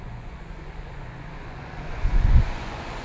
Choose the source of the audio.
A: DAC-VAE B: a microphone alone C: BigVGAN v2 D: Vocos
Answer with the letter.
D